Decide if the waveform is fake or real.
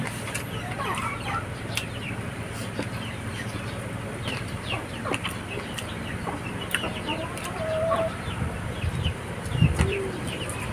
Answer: fake